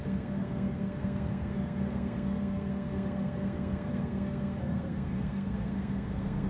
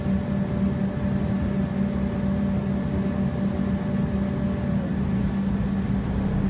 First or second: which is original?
second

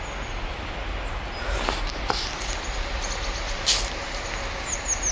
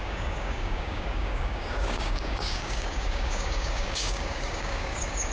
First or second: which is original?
first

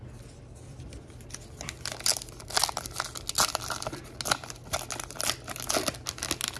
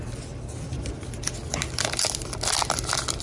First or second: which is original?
first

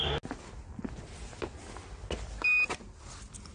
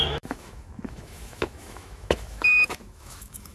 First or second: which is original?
first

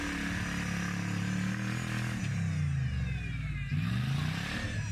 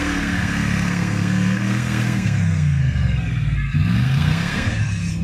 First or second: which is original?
first